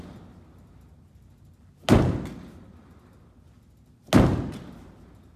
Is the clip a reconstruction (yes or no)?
no